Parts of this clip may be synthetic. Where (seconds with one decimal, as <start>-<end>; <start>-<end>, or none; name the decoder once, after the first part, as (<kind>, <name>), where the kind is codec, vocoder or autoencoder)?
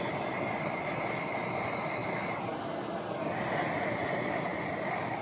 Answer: 0.0-2.0 (vocoder, BigVGAN v2); 3.8-5.2